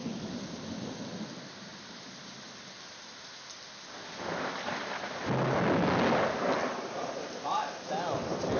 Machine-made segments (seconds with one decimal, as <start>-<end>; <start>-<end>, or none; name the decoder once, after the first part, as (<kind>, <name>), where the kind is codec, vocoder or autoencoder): none